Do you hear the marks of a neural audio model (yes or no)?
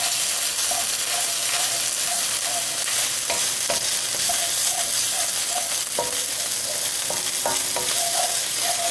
no